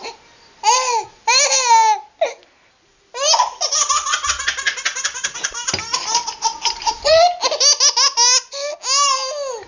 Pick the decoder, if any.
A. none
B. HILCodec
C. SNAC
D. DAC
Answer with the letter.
A